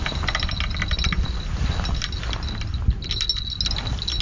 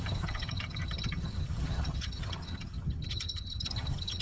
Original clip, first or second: first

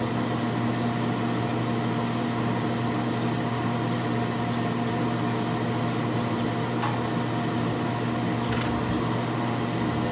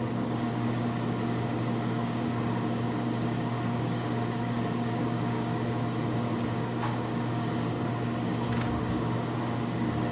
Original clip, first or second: first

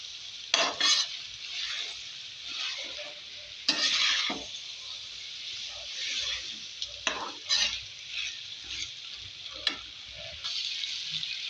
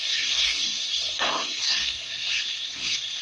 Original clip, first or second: first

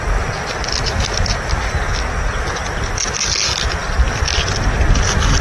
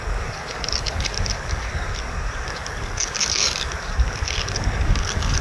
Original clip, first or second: first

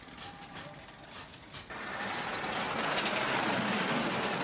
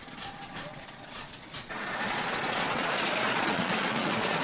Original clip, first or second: first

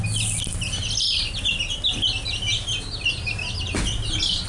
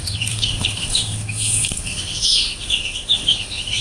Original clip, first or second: first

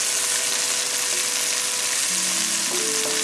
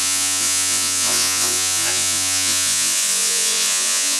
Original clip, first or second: first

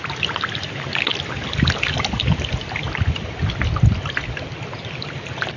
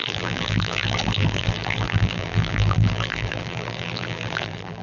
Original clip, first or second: first